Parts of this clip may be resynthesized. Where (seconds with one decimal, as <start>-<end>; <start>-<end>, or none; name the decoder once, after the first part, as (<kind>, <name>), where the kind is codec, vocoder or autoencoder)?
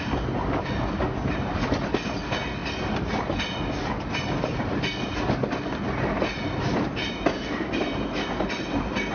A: none